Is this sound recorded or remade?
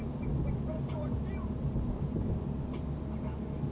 recorded